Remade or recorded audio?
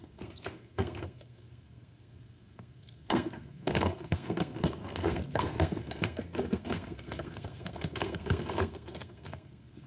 remade